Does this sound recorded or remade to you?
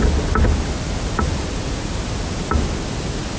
recorded